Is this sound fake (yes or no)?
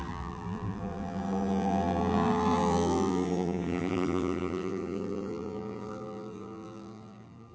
yes